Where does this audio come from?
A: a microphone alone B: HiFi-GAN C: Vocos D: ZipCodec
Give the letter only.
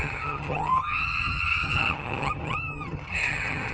B